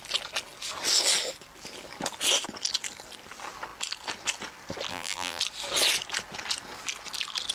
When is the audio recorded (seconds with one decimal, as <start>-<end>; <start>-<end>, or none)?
0.0-4.9; 5.4-7.5